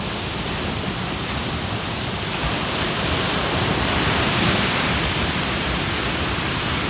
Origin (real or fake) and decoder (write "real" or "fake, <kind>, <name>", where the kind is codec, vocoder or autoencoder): fake, vocoder, BigVGAN v2